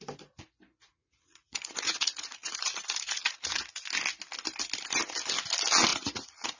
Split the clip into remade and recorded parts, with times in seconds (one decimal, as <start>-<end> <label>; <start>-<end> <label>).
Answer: 0.0-0.9 recorded; 0.9-3.8 remade; 3.8-5.9 recorded; 5.9-6.6 remade